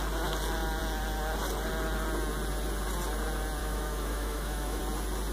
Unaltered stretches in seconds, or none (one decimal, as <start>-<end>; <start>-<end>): 0.0-3.6; 4.8-5.3